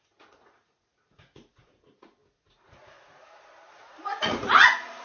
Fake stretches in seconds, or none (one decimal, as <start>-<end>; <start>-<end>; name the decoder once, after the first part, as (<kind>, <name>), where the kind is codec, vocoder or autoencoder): 0.0-5.0 (vocoder, Vocos)